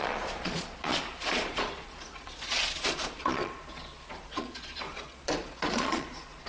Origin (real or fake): fake